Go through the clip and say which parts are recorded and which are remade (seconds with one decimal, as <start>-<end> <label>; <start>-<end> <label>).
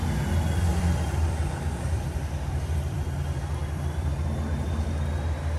0.0-0.7 recorded; 0.7-4.1 remade; 4.1-5.6 recorded